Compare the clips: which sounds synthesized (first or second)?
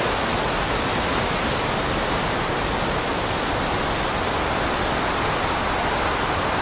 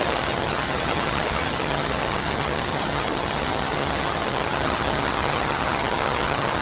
second